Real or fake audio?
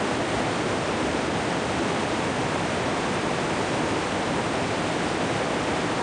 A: real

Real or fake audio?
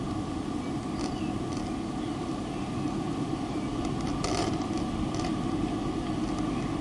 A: real